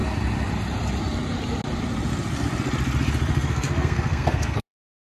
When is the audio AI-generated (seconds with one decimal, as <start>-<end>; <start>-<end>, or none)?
3.3-5.0